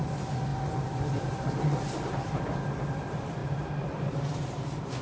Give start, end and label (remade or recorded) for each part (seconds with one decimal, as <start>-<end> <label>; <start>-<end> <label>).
0.0-0.5 recorded; 0.5-2.7 remade; 2.7-3.4 recorded; 3.4-4.4 remade; 4.4-5.0 recorded